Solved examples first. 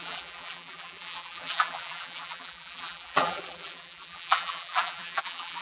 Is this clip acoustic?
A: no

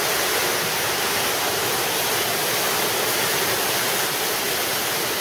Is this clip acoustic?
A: yes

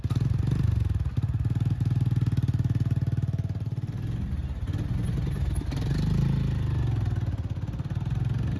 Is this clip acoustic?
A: yes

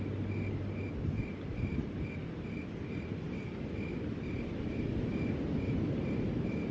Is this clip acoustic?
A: yes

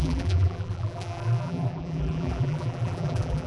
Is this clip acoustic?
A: no